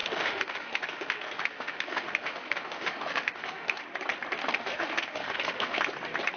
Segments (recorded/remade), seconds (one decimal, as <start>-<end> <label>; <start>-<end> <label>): 0.0-3.8 remade; 3.8-4.4 recorded; 4.4-5.8 remade; 5.8-6.4 recorded